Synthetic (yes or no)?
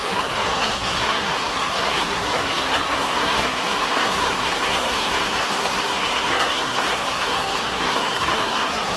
yes